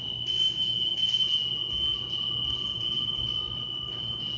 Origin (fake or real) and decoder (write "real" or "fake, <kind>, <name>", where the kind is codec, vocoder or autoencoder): real